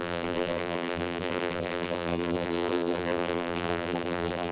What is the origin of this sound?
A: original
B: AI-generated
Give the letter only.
B